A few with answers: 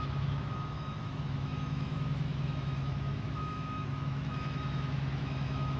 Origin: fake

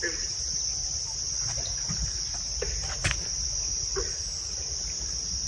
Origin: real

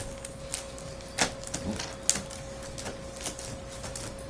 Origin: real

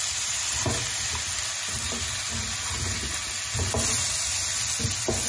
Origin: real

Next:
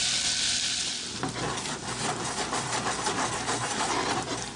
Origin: fake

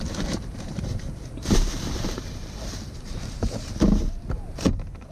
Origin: fake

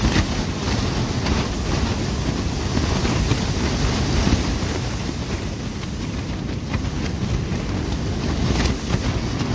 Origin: real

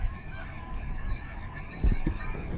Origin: fake